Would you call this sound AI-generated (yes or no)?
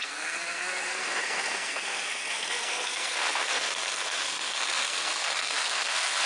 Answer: yes